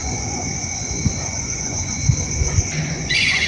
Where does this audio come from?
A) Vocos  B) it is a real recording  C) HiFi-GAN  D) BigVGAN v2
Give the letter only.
A